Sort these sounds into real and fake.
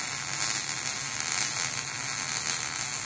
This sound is real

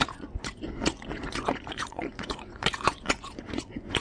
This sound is fake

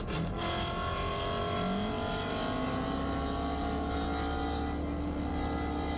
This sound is real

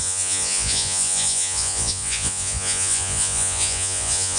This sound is fake